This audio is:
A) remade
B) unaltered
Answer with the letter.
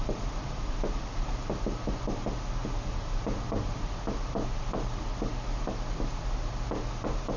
B